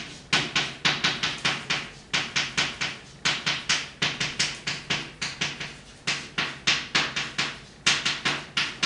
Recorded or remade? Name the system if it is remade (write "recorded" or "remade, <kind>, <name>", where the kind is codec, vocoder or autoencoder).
recorded